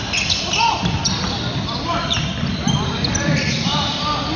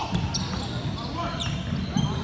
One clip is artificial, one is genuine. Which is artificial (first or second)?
first